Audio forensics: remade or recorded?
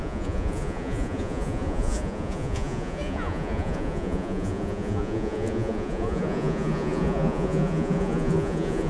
remade